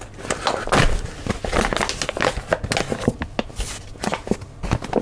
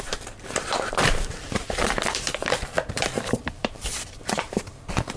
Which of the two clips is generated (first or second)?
second